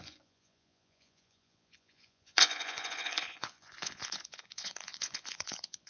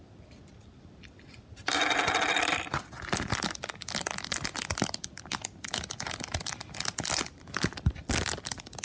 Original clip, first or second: second